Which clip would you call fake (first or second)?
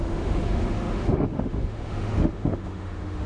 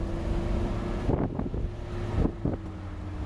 first